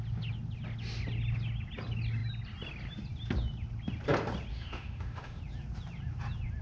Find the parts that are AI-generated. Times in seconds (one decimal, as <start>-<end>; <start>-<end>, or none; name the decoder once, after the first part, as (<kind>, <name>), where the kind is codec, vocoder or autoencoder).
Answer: 4.5-5.4 (autoencoder, DAC-VAE)